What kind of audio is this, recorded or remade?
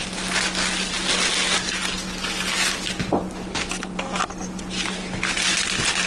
recorded